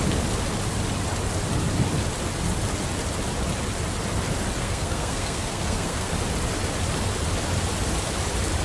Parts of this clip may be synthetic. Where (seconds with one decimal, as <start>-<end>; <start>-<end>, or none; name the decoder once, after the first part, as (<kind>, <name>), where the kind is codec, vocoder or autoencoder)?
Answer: 4.6-6.1 (codec, SNAC)